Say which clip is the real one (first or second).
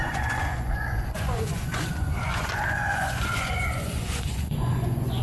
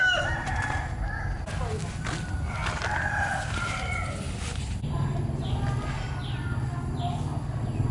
second